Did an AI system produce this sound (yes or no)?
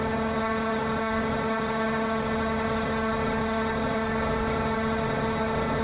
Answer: yes